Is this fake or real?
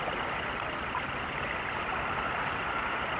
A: real